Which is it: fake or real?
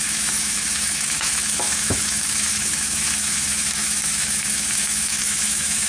fake